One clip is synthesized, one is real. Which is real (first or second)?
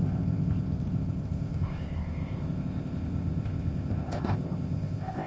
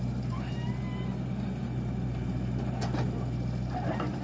second